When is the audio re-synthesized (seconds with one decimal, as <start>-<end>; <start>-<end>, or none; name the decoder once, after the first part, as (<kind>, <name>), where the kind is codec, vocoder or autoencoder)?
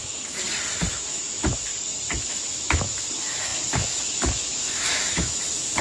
0.0-0.4 (autoencoder, DAC-VAE); 0.9-1.7; 2.2-5.8